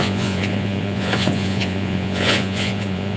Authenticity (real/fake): fake